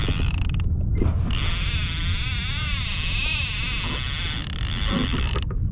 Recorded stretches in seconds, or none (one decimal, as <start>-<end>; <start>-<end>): 0.0-5.7